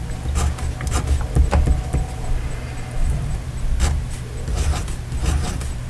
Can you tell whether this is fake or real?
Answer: real